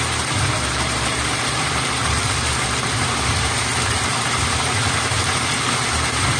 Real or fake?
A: fake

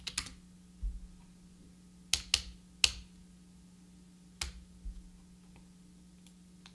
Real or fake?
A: real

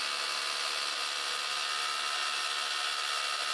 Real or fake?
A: real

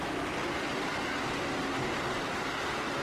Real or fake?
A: real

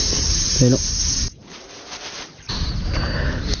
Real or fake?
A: fake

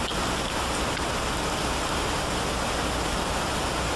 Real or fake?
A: real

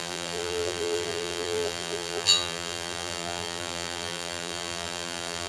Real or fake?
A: fake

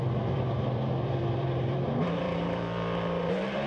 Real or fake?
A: fake